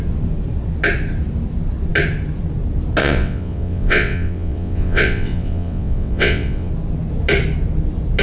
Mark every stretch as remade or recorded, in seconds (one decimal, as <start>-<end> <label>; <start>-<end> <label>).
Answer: 0.0-3.0 recorded; 3.0-6.7 remade; 6.7-8.2 recorded